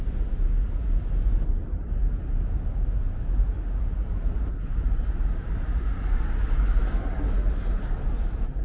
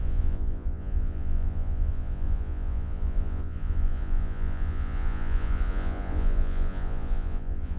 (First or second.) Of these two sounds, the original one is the first